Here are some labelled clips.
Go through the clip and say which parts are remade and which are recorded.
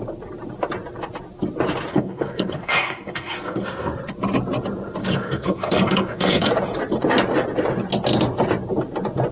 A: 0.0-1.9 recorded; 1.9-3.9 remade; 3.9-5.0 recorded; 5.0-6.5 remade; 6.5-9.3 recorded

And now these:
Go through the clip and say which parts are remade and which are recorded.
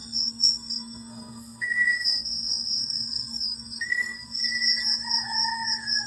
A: 0.0-4.4 remade; 4.4-6.1 recorded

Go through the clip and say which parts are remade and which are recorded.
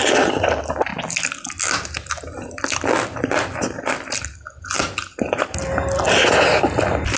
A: 0.0-7.2 recorded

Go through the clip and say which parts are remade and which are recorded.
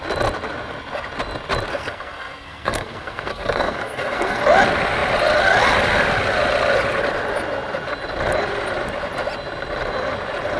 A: 0.0-1.7 recorded; 1.7-4.4 remade; 4.4-10.6 recorded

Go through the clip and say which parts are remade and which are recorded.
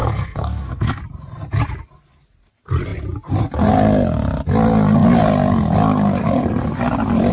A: 0.0-1.0 remade; 1.0-7.3 recorded